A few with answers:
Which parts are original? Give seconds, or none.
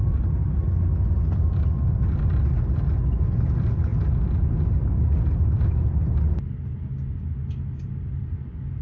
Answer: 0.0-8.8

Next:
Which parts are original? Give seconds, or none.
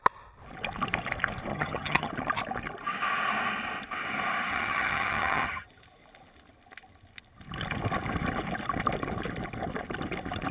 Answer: 0.0-1.5; 2.1-4.5; 5.7-10.5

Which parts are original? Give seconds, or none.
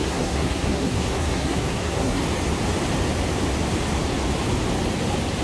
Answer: 2.2-5.4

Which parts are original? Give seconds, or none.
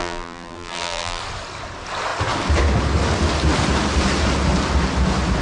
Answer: 1.2-5.4